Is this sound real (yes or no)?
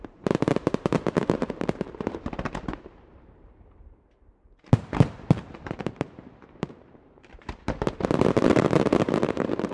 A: no